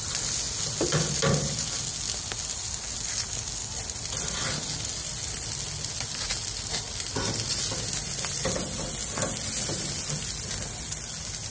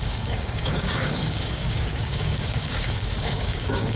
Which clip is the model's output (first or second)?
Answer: second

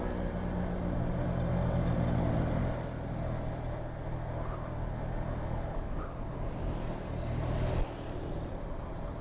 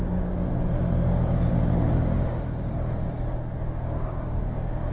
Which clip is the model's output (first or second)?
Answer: second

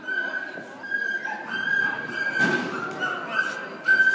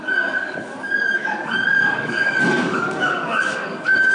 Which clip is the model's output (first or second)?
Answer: second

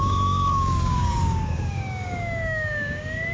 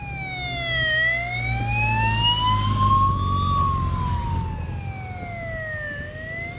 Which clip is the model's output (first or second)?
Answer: first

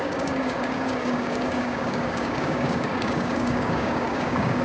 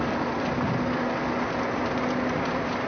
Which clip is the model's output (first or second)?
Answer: first